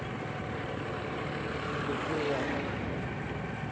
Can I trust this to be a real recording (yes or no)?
yes